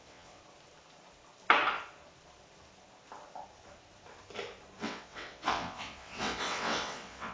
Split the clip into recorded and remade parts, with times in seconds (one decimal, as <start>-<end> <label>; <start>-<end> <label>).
0.0-0.4 remade; 0.4-4.8 recorded; 4.8-7.3 remade